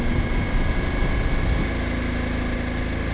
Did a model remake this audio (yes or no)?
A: no